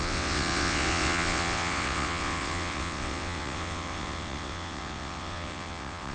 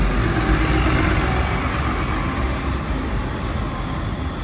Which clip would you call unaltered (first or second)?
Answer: second